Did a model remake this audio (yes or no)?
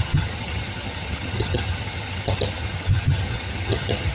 yes